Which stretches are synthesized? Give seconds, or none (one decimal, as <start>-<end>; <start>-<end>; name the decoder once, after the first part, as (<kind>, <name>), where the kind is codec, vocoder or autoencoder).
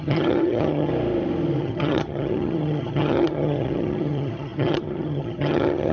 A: 0.0-0.9 (vocoder, HiFi-GAN); 1.6-5.9